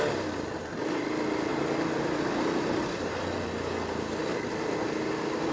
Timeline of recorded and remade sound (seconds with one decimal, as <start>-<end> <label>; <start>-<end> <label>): 0.0-5.5 recorded